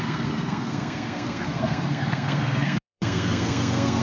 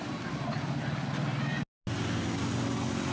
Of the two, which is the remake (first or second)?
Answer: first